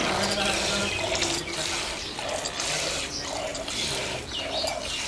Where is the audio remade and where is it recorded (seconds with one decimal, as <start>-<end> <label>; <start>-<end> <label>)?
0.0-5.1 recorded